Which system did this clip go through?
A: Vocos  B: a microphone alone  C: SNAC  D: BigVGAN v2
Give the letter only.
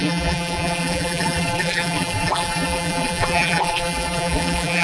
D